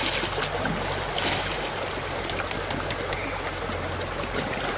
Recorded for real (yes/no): yes